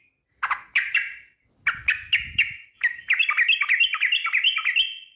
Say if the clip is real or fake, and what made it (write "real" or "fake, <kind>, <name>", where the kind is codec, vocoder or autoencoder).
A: real